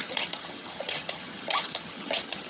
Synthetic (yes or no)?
yes